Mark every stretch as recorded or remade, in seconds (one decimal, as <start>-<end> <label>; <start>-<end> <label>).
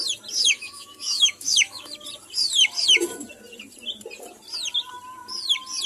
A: 0.0-0.4 recorded; 0.4-1.9 remade; 1.9-5.9 recorded